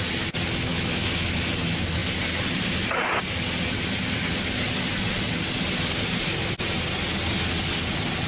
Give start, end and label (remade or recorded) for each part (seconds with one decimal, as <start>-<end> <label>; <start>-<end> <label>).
0.0-0.7 recorded; 0.7-1.4 remade; 1.4-8.3 recorded